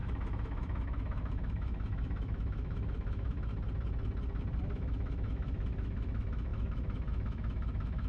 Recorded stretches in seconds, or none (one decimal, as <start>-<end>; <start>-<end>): 3.5-4.6